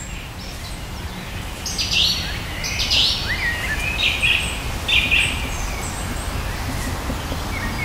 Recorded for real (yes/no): yes